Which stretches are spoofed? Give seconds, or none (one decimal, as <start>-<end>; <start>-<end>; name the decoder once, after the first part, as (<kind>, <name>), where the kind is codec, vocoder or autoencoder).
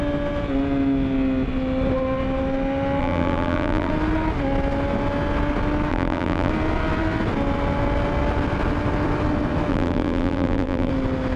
3.0-3.9 (vocoder, BigVGAN v2); 5.9-6.5; 9.7-10.9